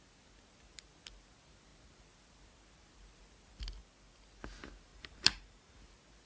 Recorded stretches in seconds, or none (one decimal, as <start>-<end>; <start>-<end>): 0.0-4.9; 5.8-6.3